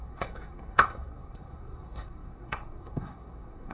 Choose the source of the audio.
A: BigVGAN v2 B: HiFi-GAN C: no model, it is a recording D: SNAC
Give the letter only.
D